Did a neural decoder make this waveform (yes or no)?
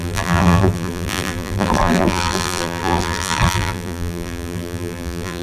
yes